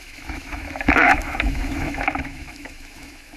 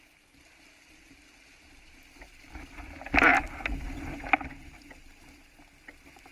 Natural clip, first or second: second